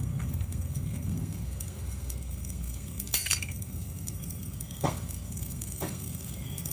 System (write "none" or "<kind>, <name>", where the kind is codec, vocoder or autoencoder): codec, SNAC